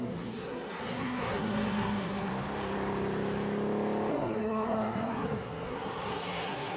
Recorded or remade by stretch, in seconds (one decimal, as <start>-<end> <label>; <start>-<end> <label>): 0.0-2.3 remade; 2.3-4.1 recorded; 4.1-6.8 remade